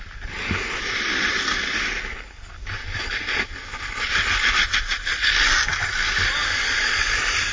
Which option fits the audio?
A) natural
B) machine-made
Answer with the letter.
A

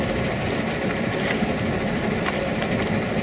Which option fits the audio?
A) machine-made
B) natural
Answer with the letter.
B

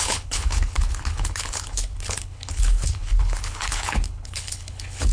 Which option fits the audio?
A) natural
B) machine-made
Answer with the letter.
B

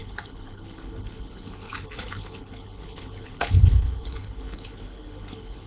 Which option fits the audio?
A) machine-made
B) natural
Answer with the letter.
A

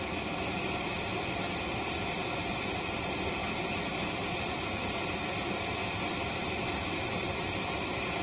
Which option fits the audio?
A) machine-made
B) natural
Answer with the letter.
B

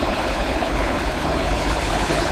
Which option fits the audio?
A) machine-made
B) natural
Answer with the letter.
A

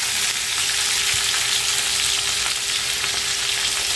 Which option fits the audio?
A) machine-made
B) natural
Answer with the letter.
B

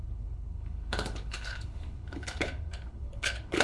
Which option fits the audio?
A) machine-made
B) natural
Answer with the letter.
A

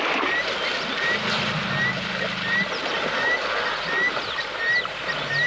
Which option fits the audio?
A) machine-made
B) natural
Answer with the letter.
B